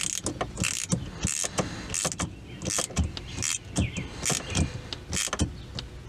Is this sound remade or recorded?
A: recorded